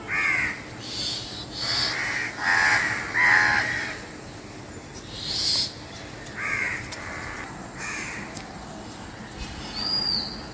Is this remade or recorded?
recorded